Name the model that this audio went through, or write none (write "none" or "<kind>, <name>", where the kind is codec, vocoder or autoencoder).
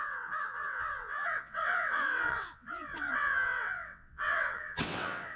vocoder, WaveNeXt